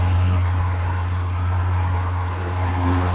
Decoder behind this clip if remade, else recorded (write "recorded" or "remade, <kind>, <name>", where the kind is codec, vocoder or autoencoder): remade, codec, SNAC